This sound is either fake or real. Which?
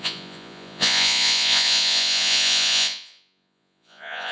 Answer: fake